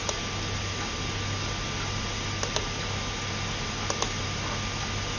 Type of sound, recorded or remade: recorded